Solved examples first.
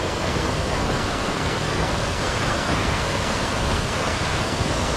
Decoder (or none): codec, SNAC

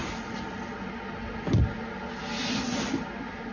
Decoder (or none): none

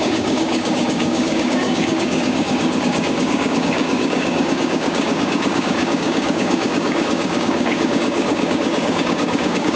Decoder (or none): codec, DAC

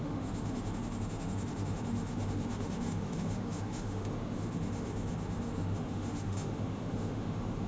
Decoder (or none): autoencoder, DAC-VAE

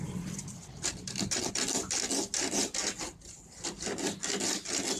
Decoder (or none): none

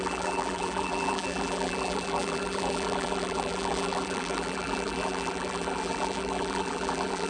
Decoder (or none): vocoder, BigVGAN v2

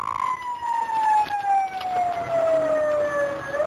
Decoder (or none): none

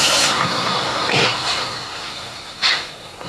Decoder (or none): codec, SNAC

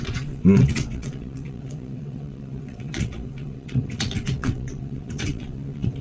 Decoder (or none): vocoder, WaveNeXt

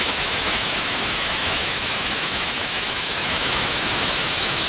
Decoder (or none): autoencoder, DAC-VAE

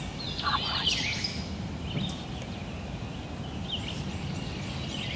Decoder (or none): none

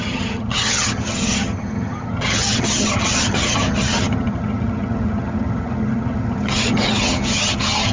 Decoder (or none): vocoder, HiFi-GAN